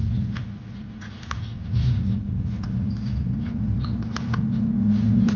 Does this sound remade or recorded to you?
recorded